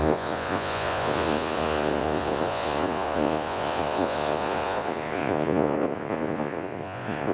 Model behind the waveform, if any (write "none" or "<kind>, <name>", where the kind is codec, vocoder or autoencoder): vocoder, Vocos